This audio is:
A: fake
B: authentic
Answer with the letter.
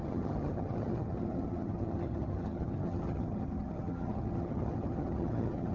A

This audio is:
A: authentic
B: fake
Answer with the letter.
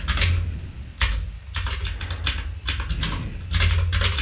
A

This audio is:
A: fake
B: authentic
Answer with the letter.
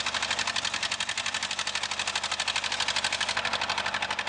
B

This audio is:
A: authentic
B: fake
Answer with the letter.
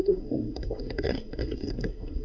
B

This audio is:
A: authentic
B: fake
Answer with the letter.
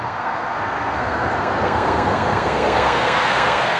B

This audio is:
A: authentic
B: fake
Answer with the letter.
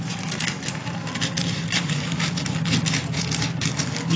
A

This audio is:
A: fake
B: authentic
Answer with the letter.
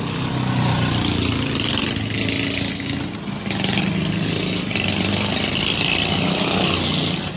B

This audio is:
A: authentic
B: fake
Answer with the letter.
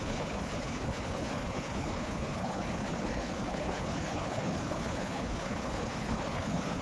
B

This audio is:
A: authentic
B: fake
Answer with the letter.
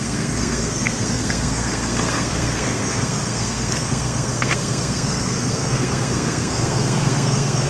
B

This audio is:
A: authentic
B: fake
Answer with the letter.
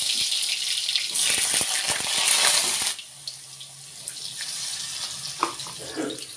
A